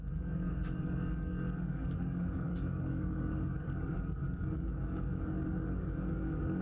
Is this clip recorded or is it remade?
remade